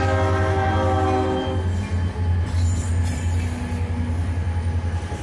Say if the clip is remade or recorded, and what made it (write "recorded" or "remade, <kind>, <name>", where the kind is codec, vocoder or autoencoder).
recorded